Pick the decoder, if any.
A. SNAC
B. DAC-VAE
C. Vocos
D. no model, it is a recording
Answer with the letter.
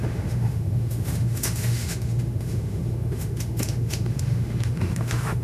B